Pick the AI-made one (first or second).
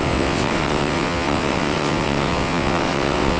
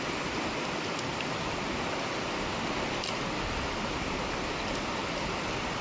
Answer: first